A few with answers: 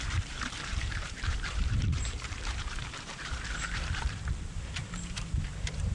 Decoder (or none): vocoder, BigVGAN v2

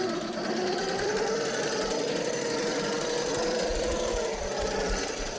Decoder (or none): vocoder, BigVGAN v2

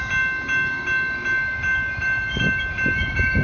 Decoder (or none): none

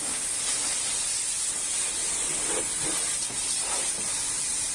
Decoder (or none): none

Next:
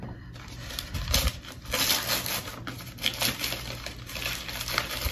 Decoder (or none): none